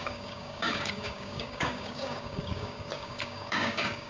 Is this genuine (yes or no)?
no